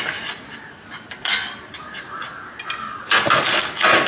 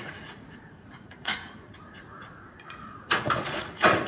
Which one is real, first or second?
first